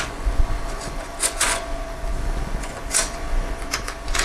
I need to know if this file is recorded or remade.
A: remade